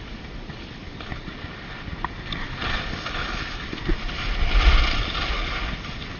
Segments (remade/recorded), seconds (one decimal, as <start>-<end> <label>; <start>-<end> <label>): 0.0-6.2 recorded